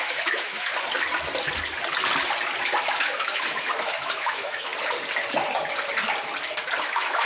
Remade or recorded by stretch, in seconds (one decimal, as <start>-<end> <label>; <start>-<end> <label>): 0.0-0.7 remade; 0.7-3.0 recorded; 3.0-4.7 remade; 4.7-6.8 recorded; 6.8-7.3 remade